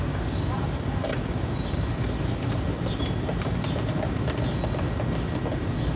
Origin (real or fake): real